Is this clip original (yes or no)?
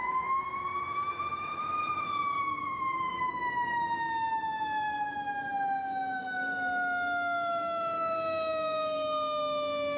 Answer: no